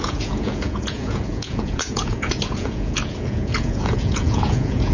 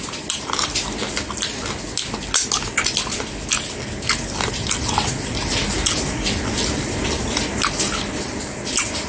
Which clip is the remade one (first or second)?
first